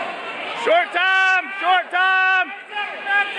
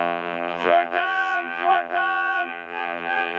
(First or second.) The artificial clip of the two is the second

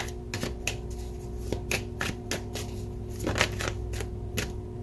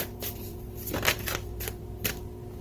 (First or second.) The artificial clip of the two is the second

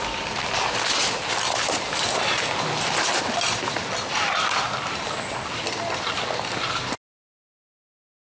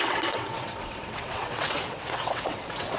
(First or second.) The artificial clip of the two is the second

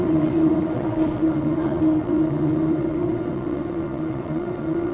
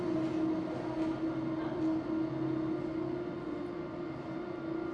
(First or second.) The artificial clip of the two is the first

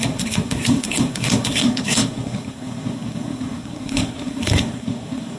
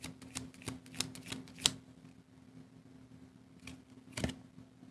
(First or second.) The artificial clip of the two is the first